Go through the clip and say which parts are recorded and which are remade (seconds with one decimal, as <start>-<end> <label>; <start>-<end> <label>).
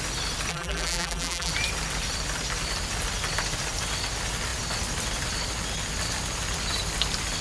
0.0-0.5 recorded; 0.5-1.5 remade; 1.5-7.4 recorded